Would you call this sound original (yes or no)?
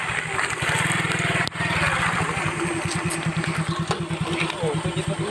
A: yes